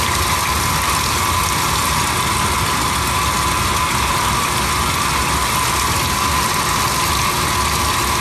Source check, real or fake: real